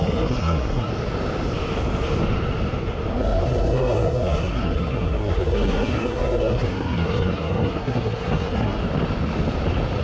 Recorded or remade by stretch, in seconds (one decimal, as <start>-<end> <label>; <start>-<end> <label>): 0.0-0.9 remade; 0.9-3.1 recorded; 3.1-8.8 remade; 8.8-10.0 recorded